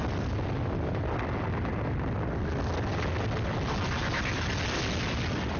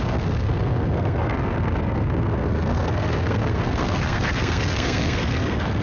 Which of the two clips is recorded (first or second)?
first